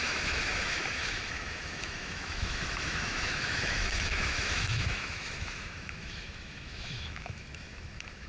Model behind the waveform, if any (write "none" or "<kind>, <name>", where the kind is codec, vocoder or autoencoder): autoencoder, DAC-VAE